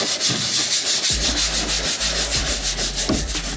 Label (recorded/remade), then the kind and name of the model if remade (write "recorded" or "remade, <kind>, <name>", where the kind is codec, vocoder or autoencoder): recorded